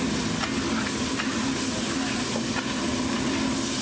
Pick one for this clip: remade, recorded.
recorded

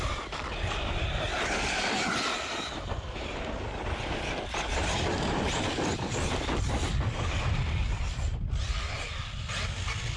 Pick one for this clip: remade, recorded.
recorded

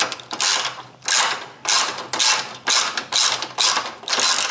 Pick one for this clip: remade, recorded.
recorded